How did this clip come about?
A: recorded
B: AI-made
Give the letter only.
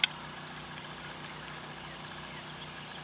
A